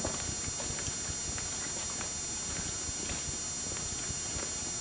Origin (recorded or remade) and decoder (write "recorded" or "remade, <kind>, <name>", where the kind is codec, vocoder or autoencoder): recorded